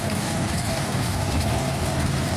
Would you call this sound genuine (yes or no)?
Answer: no